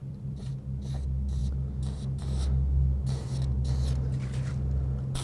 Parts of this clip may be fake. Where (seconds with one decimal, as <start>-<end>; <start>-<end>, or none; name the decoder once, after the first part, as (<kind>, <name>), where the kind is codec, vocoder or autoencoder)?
0.0-0.5 (vocoder, BigVGAN v2)